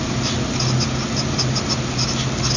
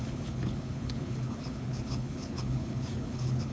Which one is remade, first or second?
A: second